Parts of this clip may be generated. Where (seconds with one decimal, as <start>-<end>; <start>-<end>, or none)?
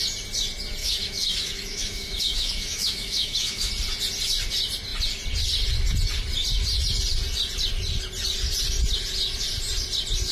0.8-3.7